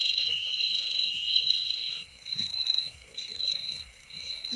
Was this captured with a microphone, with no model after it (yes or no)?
no